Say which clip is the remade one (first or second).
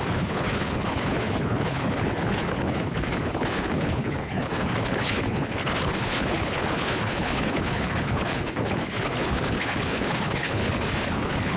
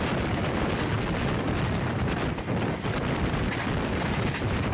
first